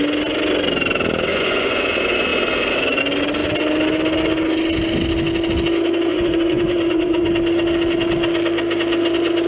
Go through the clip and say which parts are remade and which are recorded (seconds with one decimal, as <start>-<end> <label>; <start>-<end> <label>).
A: 0.0-1.3 recorded; 1.3-1.8 remade; 1.8-6.1 recorded; 6.1-7.3 remade; 7.3-9.5 recorded